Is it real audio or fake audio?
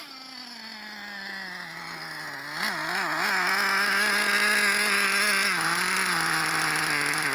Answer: real